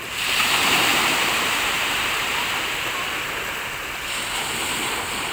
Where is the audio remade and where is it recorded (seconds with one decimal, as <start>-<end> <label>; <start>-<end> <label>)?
0.0-2.3 remade; 2.3-5.3 recorded